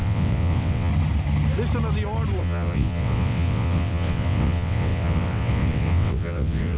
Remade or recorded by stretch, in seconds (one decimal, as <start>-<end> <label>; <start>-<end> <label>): 0.0-0.9 remade; 0.9-2.4 recorded; 2.4-6.8 remade